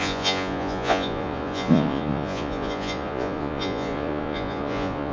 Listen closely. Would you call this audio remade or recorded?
remade